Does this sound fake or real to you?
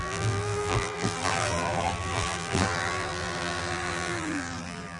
fake